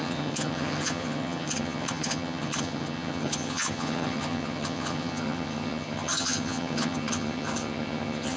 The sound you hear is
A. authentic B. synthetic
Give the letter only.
B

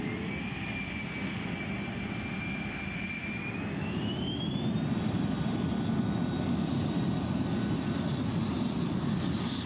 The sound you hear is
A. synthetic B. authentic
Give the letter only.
B